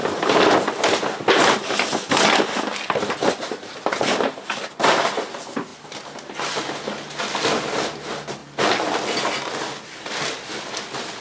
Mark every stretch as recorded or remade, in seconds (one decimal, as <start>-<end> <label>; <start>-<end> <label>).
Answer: 0.0-11.2 recorded

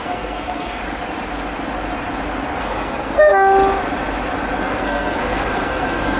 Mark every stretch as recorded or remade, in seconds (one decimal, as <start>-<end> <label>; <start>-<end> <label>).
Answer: 0.0-0.8 remade; 0.8-2.6 recorded; 2.6-3.3 remade; 3.3-4.6 recorded; 4.6-6.2 remade

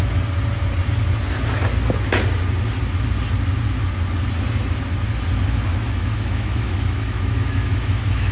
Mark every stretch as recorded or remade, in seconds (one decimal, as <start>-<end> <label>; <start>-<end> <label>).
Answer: 0.0-5.7 recorded; 5.7-8.3 remade

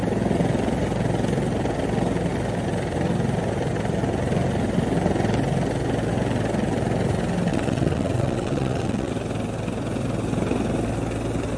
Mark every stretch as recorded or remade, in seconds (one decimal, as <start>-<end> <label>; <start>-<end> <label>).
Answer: 0.0-7.5 recorded; 7.5-9.1 remade; 9.1-11.6 recorded

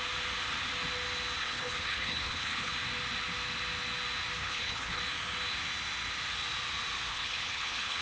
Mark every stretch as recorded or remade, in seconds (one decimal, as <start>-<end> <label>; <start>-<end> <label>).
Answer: 0.0-1.4 recorded; 1.4-2.7 remade; 2.7-4.4 recorded; 4.4-5.0 remade; 5.0-7.1 recorded; 7.1-8.0 remade

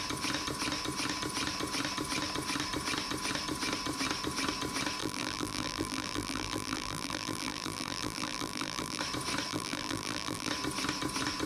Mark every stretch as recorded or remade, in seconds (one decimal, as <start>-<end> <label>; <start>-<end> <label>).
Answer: 0.0-5.0 recorded; 5.0-9.0 remade; 9.0-9.5 recorded; 9.5-10.5 remade; 10.5-11.5 recorded

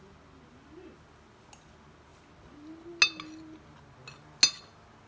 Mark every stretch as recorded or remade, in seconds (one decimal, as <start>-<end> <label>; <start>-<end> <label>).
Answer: 0.0-5.1 recorded